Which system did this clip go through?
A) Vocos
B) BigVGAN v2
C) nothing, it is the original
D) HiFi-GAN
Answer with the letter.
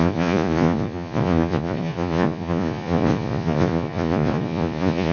A